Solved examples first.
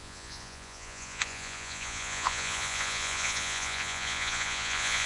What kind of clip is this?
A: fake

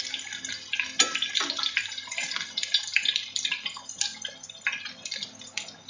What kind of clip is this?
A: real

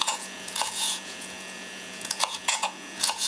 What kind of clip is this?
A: fake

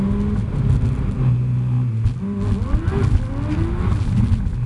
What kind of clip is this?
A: real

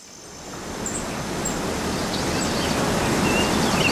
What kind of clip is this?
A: real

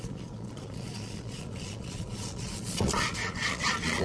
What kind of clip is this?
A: fake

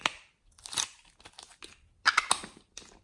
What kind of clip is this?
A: real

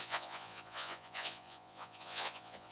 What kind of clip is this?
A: fake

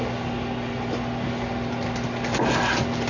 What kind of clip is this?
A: real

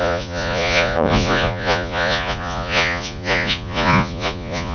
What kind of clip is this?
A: fake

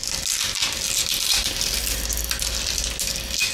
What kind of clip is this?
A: real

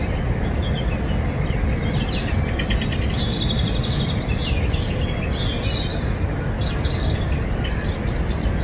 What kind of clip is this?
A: real